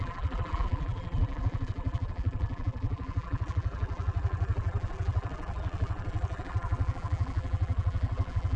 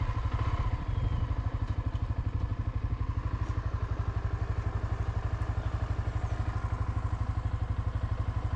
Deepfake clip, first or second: first